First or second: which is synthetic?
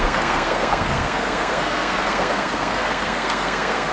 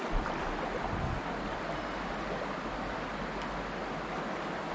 first